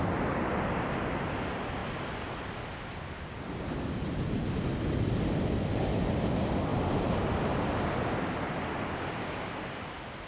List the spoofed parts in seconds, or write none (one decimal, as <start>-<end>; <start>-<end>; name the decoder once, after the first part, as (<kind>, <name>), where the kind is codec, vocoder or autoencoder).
none